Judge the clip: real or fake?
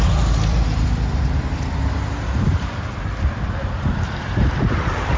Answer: fake